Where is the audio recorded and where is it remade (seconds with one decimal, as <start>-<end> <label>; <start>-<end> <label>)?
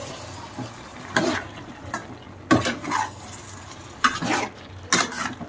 0.0-0.9 recorded; 0.9-1.6 remade; 1.6-5.5 recorded